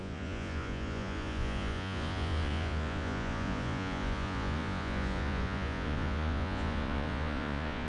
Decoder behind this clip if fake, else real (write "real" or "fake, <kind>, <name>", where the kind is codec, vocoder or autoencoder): fake, vocoder, Vocos